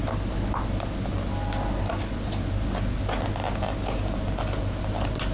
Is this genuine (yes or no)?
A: yes